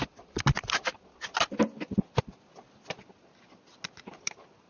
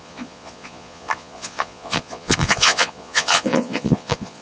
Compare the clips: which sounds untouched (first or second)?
first